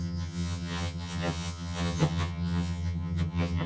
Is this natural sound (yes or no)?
no